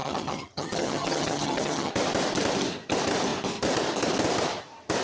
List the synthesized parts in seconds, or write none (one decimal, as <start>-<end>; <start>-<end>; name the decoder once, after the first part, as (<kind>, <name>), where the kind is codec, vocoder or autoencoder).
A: 0.0-1.9 (vocoder, HiFi-GAN)